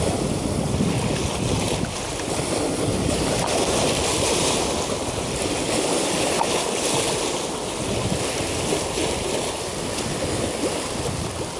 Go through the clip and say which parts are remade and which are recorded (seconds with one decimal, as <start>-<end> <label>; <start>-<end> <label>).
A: 0.0-11.6 recorded